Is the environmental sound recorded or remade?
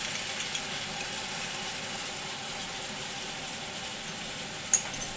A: recorded